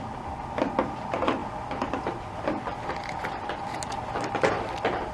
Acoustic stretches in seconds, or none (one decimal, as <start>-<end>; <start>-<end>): 0.0-5.1